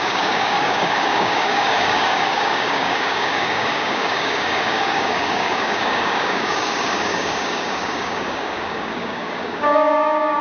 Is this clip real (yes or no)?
no